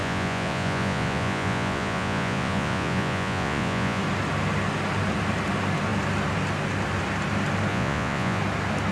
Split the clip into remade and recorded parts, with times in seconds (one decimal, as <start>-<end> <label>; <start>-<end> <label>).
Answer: 0.0-4.0 remade; 4.0-7.7 recorded; 7.7-8.4 remade; 8.4-8.9 recorded